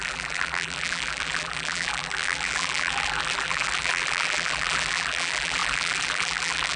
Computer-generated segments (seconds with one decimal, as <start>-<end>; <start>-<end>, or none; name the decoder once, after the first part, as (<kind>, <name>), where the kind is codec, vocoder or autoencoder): 0.0-6.8 (vocoder, BigVGAN v2)